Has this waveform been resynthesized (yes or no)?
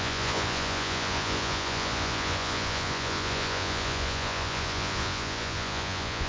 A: yes